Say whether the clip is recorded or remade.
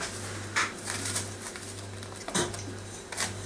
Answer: remade